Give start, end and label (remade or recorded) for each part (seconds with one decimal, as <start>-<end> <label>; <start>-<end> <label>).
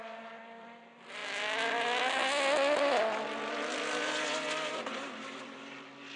0.0-1.2 remade; 1.2-3.5 recorded; 3.5-6.2 remade